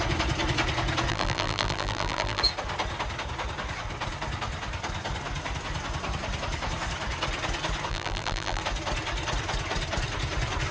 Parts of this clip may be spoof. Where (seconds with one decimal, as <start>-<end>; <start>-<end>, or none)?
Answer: 1.1-2.4; 7.9-8.6